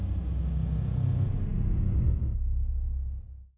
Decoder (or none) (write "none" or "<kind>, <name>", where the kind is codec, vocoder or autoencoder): none